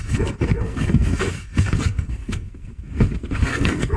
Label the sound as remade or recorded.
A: remade